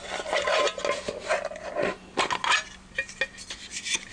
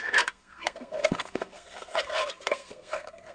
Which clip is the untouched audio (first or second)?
first